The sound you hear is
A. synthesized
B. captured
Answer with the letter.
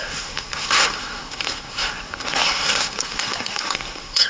A